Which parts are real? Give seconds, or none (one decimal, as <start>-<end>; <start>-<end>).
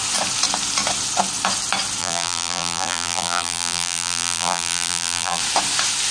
0.0-2.0; 5.4-6.1